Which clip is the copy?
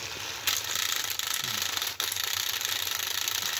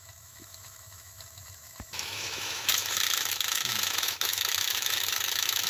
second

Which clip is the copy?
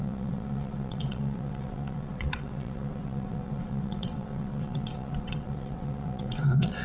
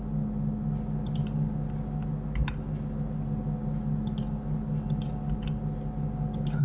first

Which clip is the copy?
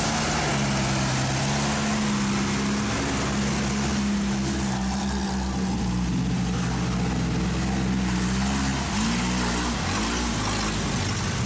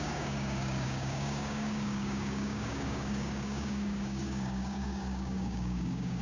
second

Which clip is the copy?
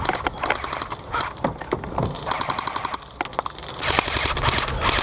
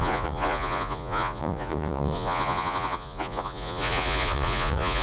second